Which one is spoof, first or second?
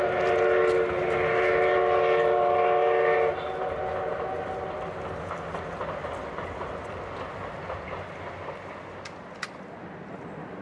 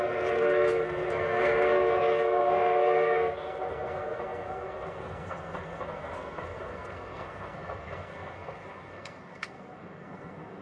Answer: second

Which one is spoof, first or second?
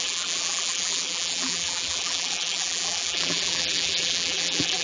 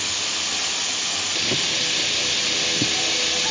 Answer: first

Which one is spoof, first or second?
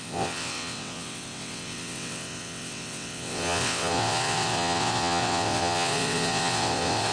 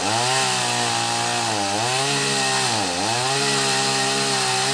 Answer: first